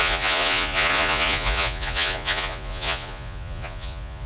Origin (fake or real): fake